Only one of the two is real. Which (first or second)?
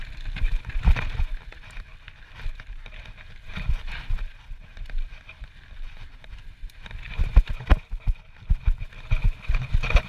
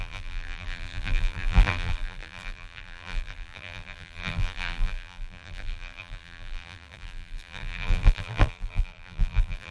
first